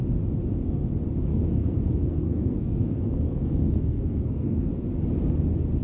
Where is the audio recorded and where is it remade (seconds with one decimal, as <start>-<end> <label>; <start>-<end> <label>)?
0.0-1.3 recorded; 1.3-4.7 remade; 4.7-5.8 recorded